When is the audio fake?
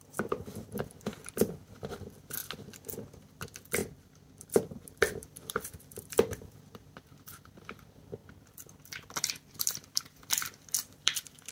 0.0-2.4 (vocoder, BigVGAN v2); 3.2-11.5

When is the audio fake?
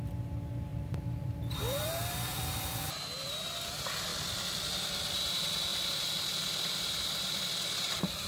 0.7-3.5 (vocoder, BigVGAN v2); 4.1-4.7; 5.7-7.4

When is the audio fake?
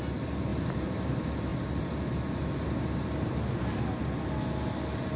0.5-1.1 (vocoder, BigVGAN v2)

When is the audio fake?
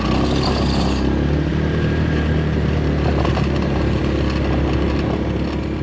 1.5-4.0 (vocoder, BigVGAN v2)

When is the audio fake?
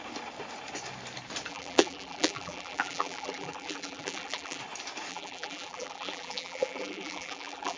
1.5-4.6 (vocoder, BigVGAN v2); 5.1-7.8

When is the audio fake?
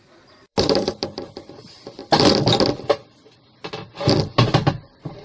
0.0-2.0 (vocoder, BigVGAN v2)